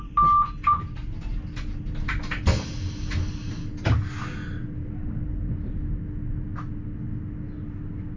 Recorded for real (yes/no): yes